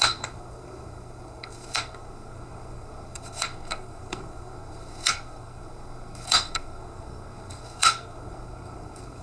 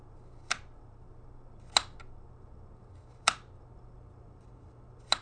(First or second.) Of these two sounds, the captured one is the second